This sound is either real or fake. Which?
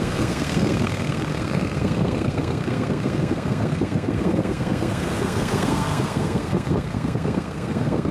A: fake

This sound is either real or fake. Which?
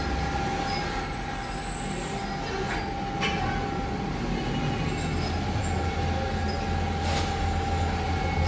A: real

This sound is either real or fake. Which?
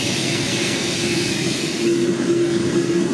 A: fake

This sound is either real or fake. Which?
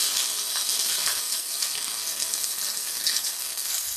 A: fake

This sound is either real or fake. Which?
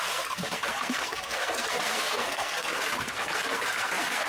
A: fake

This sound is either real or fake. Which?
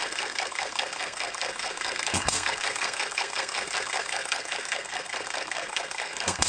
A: fake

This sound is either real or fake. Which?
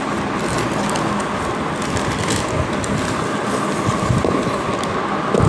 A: real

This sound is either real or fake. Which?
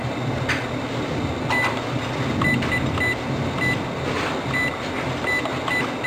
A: real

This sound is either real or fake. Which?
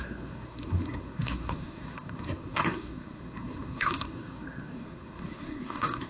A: fake